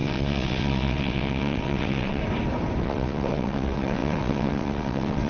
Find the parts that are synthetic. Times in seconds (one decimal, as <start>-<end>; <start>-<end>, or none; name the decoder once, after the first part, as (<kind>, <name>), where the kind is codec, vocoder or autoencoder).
0.0-2.2 (vocoder, WaveNeXt); 2.8-5.3